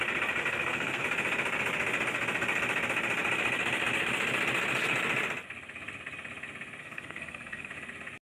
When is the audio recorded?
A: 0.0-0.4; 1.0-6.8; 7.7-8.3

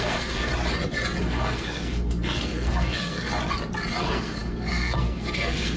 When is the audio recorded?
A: 0.5-1.2; 3.3-4.0

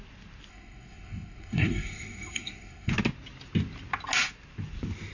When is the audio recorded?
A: 0.0-0.5; 2.9-5.1

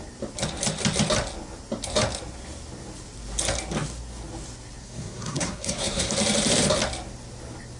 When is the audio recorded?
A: 0.0-4.8; 6.1-7.8